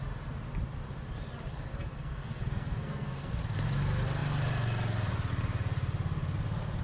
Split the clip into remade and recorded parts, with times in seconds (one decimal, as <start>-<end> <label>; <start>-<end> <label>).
0.0-1.7 recorded; 1.7-3.3 remade; 3.3-6.8 recorded